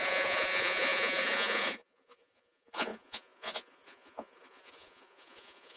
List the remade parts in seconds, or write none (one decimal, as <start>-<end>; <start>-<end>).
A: 0.0-5.8